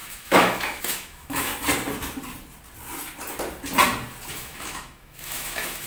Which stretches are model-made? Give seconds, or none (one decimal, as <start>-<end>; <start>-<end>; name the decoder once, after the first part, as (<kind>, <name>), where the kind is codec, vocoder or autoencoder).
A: 0.0-1.5 (autoencoder, DAC-VAE); 4.3-5.9